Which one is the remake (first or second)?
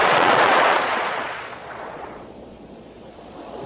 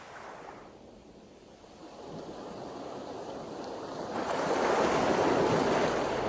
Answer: first